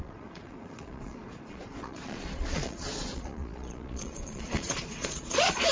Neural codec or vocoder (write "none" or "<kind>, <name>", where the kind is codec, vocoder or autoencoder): vocoder, Vocos